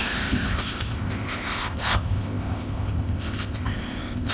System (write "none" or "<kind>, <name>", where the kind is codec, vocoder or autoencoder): codec, ZipCodec